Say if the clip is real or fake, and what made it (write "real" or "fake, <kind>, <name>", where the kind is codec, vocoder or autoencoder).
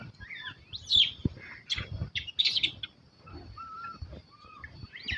real